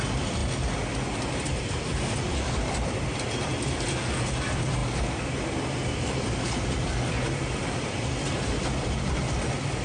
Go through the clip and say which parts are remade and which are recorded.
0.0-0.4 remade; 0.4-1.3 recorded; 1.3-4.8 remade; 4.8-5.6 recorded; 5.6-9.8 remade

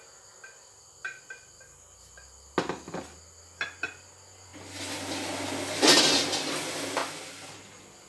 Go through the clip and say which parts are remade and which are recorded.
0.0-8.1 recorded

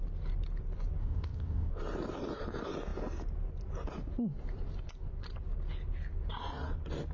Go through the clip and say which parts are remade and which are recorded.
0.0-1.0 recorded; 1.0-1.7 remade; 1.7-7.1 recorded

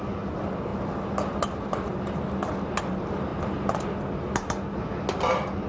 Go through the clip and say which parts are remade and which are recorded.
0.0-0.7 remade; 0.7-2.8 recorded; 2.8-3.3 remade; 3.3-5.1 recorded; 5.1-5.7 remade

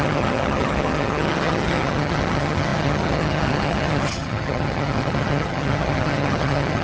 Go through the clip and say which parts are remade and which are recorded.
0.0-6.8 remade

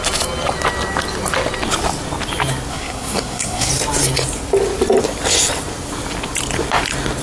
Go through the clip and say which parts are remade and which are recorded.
0.0-2.7 recorded; 2.7-3.7 remade; 3.7-7.2 recorded